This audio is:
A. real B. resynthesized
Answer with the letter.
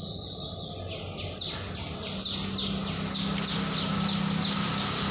A